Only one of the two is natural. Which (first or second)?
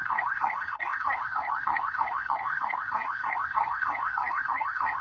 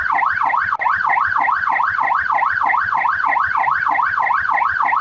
second